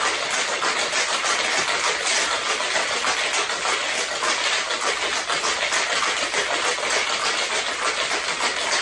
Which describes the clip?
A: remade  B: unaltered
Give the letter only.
B